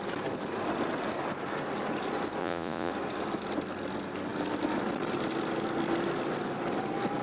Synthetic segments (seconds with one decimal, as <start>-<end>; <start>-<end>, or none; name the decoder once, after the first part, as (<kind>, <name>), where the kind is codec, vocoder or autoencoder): 2.4-2.9 (vocoder, Vocos)